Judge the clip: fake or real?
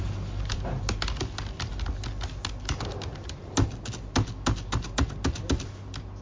real